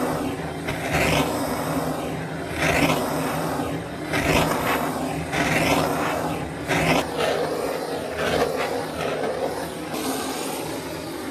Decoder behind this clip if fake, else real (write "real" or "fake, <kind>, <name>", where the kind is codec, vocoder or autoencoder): real